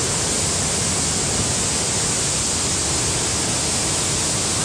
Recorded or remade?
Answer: recorded